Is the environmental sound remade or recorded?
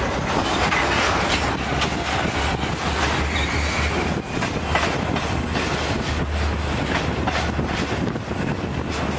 recorded